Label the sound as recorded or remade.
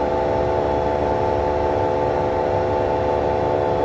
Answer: recorded